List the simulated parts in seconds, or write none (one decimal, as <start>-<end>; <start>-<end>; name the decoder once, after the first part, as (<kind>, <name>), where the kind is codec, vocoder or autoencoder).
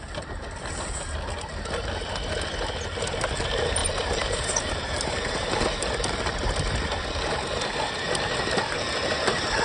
3.8-6.2 (vocoder, BigVGAN v2)